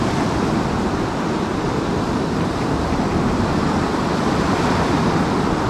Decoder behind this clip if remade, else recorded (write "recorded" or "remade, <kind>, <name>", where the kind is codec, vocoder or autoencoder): recorded